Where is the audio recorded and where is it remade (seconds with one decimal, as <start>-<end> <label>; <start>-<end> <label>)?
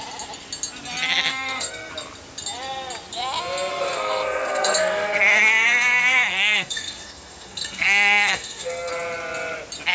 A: 0.0-1.3 recorded; 1.3-1.9 remade; 1.9-3.7 recorded; 3.7-8.9 remade; 8.9-9.9 recorded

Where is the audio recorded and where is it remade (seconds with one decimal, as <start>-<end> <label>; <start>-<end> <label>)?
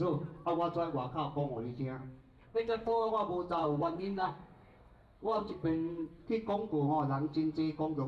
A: 0.0-2.0 recorded; 2.0-3.1 remade; 3.1-3.6 recorded; 3.6-6.2 remade; 6.2-8.1 recorded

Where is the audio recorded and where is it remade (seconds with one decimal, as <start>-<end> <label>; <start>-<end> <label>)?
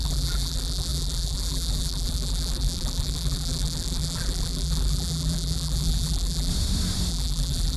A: 0.0-6.5 remade; 6.5-7.1 recorded; 7.1-7.8 remade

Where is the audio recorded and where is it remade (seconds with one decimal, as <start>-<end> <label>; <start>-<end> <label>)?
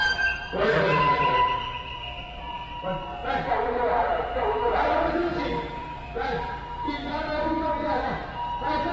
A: 0.0-2.6 remade; 2.6-3.5 recorded; 3.5-7.3 remade; 7.3-8.9 recorded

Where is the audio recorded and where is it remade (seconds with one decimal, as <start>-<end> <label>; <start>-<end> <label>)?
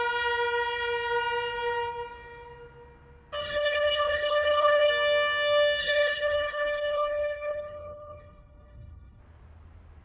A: 0.0-3.4 recorded; 3.4-4.9 remade; 4.9-5.8 recorded; 5.8-9.2 remade; 9.2-10.0 recorded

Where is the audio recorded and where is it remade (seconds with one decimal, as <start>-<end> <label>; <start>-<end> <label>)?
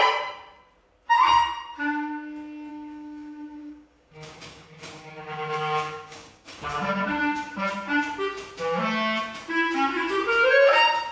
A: 0.0-2.7 recorded; 2.7-7.7 remade; 7.7-11.1 recorded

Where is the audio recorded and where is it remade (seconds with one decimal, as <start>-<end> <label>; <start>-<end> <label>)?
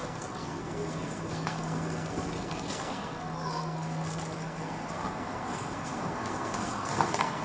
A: 0.0-7.4 remade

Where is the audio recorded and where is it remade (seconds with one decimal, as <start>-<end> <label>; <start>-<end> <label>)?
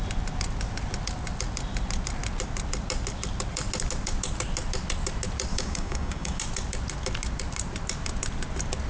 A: 0.0-5.5 recorded; 5.5-6.4 remade; 6.4-8.9 recorded